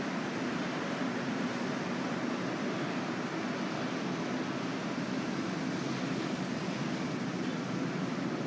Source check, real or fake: real